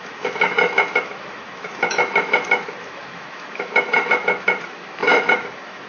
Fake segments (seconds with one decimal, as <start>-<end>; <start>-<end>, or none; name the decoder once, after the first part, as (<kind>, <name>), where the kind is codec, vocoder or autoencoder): 0.0-5.9 (autoencoder, DAC-VAE)